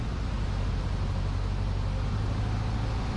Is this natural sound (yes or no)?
yes